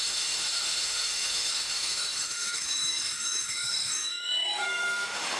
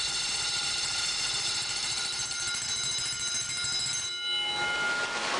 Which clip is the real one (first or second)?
second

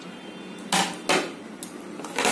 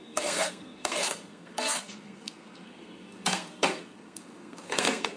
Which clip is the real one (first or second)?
first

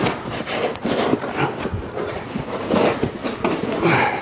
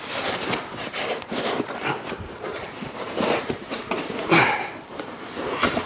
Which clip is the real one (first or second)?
first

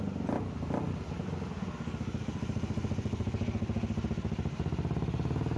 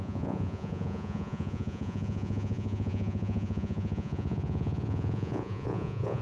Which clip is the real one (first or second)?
first